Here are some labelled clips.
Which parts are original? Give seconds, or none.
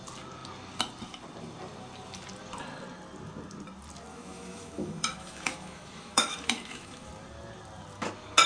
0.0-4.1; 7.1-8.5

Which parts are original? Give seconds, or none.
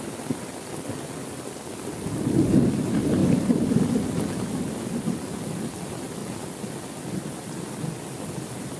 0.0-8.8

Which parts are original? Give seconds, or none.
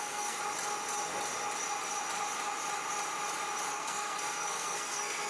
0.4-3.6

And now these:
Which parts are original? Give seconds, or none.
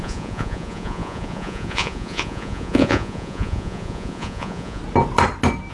4.8-5.7